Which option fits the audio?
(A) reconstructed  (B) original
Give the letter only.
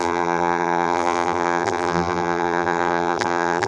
A